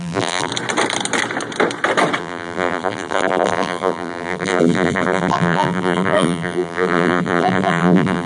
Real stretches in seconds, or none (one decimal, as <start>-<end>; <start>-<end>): 0.5-2.2